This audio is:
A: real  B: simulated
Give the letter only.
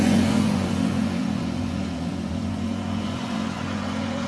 B